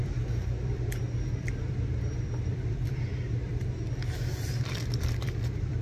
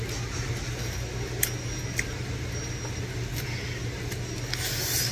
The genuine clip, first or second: second